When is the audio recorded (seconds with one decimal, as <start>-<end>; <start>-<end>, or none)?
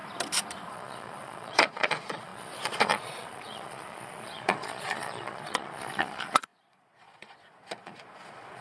0.0-0.7